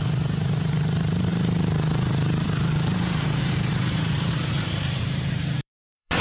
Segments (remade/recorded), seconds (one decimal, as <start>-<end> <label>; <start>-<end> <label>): 0.0-6.2 remade